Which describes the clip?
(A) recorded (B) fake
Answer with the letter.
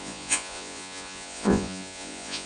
B